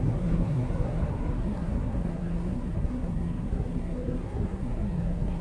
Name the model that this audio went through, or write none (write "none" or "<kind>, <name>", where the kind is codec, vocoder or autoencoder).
codec, SNAC